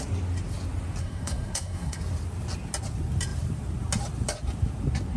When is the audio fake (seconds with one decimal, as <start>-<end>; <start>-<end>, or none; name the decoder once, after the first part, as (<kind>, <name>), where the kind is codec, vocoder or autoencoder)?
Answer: 1.0-2.0 (codec, SNAC)